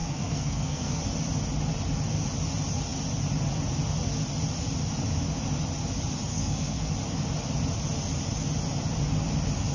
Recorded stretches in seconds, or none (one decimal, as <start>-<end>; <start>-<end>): 1.0-6.3; 6.9-9.7